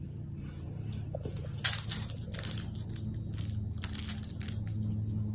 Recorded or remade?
recorded